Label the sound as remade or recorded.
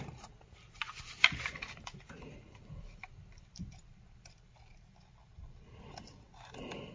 remade